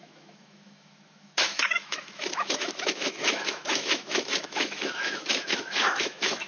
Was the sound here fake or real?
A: fake